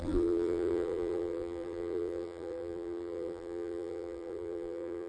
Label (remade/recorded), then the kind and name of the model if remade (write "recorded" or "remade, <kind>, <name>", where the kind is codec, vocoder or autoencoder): remade, vocoder, BigVGAN v2